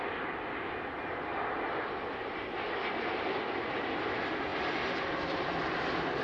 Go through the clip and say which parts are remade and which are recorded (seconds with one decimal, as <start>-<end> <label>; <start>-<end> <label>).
0.0-6.2 recorded